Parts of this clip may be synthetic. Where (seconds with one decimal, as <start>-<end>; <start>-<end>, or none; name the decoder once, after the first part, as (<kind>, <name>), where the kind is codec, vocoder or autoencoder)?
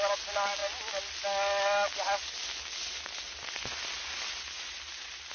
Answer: none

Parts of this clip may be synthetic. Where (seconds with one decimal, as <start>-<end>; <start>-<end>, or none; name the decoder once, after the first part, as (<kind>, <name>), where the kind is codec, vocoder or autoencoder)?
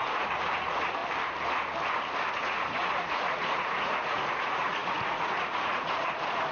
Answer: 0.0-1.0 (vocoder, Vocos); 2.3-6.5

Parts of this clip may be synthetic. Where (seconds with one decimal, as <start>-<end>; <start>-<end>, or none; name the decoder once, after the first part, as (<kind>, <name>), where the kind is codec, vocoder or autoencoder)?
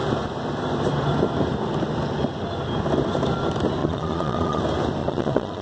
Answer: 3.8-4.6 (vocoder, Vocos); 5.0-5.6